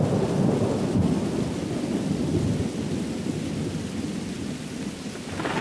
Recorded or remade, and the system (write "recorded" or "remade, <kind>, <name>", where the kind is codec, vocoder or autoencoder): recorded